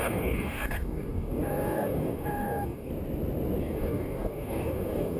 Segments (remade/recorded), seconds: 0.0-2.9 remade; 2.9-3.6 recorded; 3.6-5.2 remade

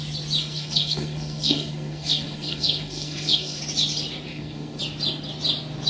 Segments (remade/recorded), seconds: 0.0-0.4 recorded; 0.4-3.6 remade; 3.6-4.3 recorded; 4.3-4.8 remade; 4.8-5.9 recorded

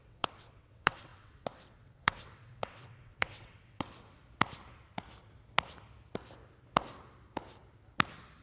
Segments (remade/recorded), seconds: 0.0-4.2 remade; 4.2-8.4 recorded

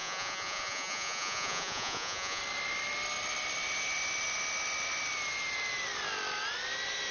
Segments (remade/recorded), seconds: 0.0-2.4 remade; 2.4-7.1 recorded

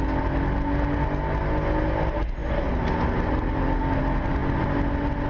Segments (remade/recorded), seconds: 0.0-5.3 recorded

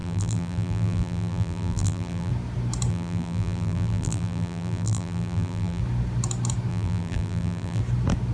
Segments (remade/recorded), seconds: 0.0-2.3 remade; 2.3-2.9 recorded; 2.9-5.8 remade; 5.8-6.7 recorded; 6.7-7.8 remade; 7.8-8.3 recorded

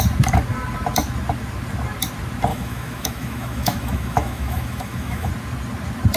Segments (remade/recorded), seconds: 0.0-2.5 recorded; 2.5-5.3 remade; 5.3-6.2 recorded

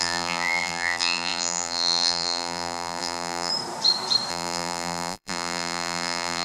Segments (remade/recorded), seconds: 0.0-3.5 remade; 3.5-4.3 recorded; 4.3-6.4 remade